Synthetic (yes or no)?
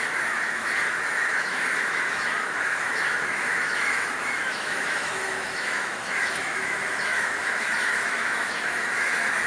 yes